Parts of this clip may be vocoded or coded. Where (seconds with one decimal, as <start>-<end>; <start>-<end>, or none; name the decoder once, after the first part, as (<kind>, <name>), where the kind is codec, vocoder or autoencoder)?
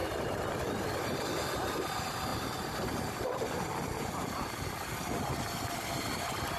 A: 0.0-0.5 (vocoder, BigVGAN v2); 2.3-5.3